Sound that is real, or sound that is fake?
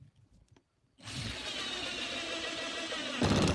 real